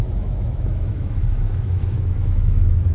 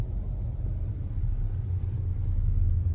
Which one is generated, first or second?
first